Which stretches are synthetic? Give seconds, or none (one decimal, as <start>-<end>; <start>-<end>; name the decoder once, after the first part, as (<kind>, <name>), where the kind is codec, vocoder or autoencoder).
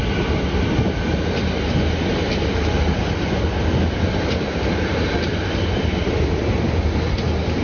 none